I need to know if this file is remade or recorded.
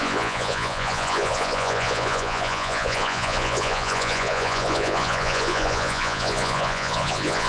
remade